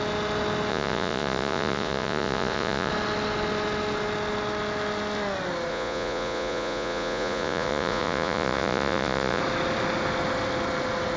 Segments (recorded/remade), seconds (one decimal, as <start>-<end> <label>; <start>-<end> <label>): 0.0-0.7 recorded; 0.7-2.9 remade; 2.9-5.7 recorded; 5.7-9.4 remade; 9.4-11.2 recorded